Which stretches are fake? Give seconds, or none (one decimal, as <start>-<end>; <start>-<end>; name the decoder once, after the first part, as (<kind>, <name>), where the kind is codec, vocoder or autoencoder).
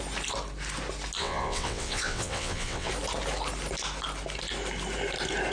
1.2-2.9 (vocoder, WaveNeXt)